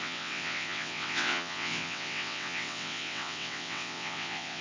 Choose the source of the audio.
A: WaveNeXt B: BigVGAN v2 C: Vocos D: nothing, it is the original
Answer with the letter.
A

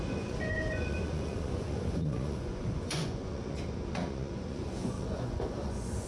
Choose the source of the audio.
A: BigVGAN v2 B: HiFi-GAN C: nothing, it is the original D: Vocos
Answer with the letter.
D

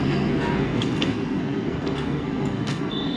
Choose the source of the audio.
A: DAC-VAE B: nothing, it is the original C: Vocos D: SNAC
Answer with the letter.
D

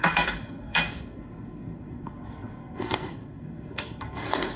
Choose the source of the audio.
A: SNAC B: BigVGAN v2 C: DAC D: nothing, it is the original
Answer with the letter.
A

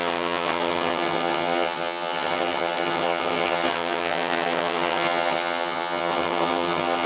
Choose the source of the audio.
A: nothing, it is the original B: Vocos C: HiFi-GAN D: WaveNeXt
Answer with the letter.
C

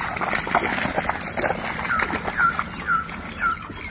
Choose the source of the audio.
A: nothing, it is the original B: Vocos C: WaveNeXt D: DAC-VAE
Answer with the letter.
A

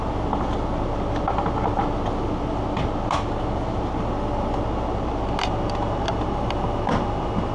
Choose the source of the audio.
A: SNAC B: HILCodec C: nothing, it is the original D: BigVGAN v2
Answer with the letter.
C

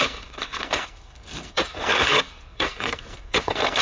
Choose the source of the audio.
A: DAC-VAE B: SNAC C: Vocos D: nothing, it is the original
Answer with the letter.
B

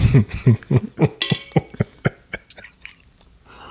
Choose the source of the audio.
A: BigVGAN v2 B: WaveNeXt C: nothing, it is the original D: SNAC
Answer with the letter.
C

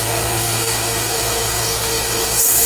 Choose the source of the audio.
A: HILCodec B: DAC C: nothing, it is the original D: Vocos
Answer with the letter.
B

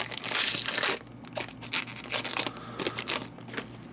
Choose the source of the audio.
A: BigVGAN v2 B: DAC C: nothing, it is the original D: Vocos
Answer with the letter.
C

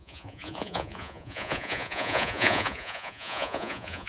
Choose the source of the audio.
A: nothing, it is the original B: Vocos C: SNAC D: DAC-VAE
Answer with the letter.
B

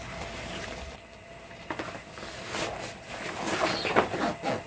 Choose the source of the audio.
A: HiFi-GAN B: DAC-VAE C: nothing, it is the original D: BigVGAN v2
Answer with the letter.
C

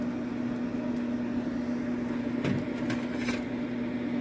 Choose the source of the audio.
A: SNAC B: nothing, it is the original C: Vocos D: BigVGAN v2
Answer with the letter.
B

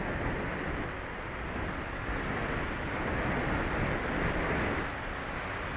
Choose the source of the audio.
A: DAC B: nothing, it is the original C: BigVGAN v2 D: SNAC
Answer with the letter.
B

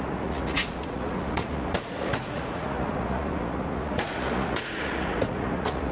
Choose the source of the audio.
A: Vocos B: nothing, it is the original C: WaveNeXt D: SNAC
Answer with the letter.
A